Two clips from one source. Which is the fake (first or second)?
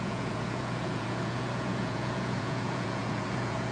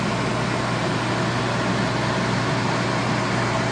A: first